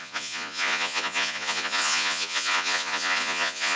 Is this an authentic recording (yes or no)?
no